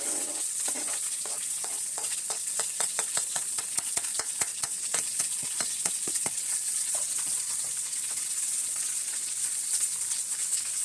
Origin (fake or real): fake